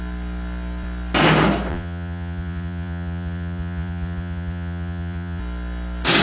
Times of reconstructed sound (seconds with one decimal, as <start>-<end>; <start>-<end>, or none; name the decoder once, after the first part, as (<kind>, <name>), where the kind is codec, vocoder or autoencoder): 1.7-5.4 (vocoder, Vocos)